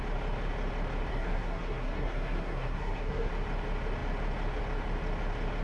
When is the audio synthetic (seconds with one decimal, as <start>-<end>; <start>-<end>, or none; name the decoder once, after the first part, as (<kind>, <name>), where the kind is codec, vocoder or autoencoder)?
1.1-3.3 (codec, SNAC)